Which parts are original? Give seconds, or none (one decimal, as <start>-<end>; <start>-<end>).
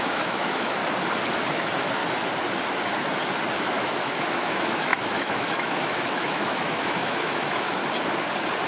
0.8-1.5; 2.0-3.6; 7.8-8.7